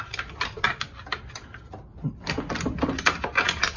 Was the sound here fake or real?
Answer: real